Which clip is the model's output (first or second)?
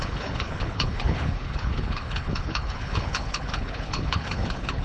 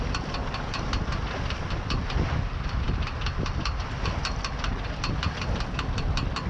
first